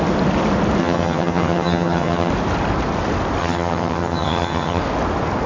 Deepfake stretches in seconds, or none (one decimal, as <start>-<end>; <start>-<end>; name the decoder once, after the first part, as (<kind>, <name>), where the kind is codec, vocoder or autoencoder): 0.8-2.3 (vocoder, HiFi-GAN); 3.4-4.8